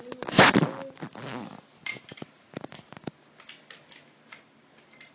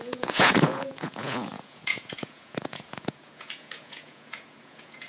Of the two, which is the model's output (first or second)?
second